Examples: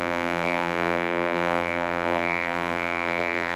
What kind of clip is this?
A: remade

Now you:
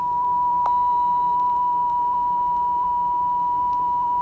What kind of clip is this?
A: remade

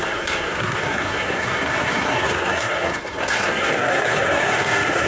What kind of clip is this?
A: remade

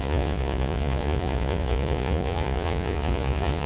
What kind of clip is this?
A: remade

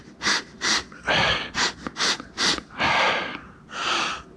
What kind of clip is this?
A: recorded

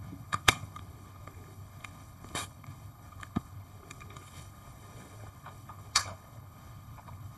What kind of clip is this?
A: remade